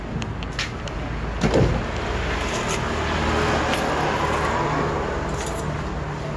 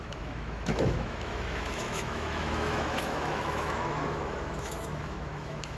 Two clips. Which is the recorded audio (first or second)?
first